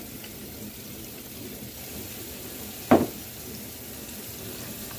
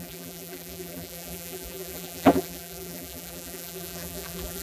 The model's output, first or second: second